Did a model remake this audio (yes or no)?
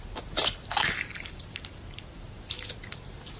no